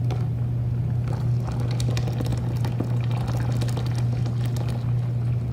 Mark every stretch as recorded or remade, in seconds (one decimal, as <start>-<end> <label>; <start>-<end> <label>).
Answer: 0.0-5.5 recorded

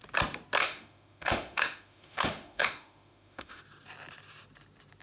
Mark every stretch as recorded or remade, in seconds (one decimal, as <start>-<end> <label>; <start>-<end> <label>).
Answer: 0.0-0.6 recorded; 0.6-3.6 remade; 3.6-5.0 recorded

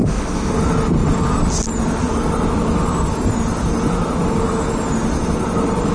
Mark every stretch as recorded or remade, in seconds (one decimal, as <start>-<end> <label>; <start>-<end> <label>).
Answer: 0.0-0.5 remade; 0.5-5.9 recorded